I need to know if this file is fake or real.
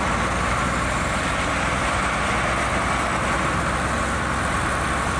real